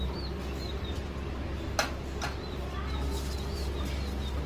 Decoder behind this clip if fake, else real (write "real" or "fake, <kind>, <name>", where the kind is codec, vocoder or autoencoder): real